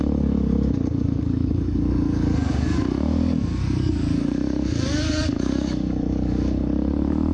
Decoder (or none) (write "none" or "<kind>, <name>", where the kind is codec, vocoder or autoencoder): codec, DAC